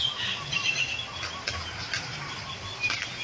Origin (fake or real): real